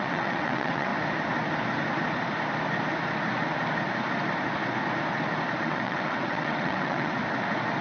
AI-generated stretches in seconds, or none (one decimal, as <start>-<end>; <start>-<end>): 0.0-0.9; 5.6-7.2